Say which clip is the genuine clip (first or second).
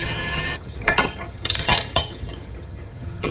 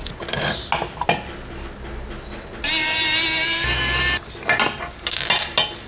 second